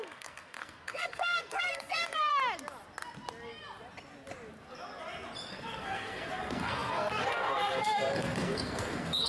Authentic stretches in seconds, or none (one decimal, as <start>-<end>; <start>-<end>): 2.3-5.5